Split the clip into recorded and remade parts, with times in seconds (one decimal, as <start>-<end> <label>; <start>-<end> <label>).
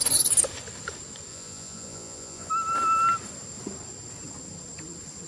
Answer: 0.0-1.3 recorded; 1.3-2.5 remade; 2.5-5.3 recorded